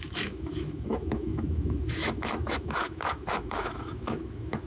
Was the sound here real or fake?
fake